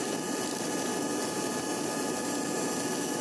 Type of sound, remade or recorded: recorded